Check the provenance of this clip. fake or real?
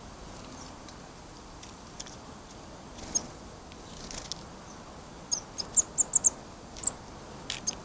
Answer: real